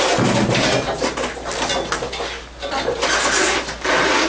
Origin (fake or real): real